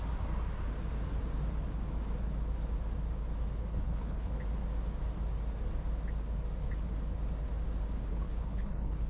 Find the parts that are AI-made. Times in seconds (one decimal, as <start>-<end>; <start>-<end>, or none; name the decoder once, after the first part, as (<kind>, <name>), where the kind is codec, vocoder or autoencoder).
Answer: 3.6-4.4 (codec, HILCodec); 8.1-9.1